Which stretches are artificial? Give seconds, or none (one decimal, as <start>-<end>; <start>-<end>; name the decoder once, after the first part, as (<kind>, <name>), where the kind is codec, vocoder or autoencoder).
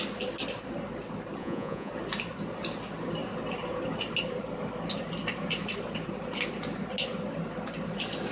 1.4-1.9 (vocoder, Vocos)